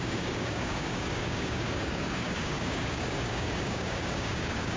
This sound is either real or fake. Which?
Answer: fake